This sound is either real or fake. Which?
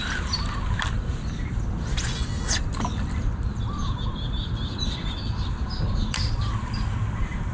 real